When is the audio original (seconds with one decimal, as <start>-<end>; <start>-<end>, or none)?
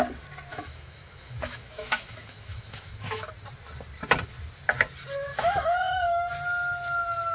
0.0-0.5; 3.3-5.3; 6.3-7.3